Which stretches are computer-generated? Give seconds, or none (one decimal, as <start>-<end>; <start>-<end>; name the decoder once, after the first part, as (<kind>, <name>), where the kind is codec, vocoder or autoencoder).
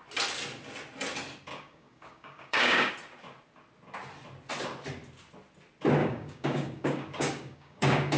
1.5-2.9 (codec, DAC); 6.0-8.2